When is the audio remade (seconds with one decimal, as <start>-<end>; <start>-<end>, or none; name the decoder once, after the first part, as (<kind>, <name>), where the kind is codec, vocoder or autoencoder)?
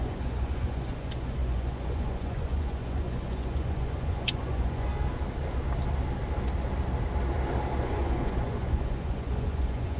0.0-4.9 (vocoder, Vocos); 7.8-10.0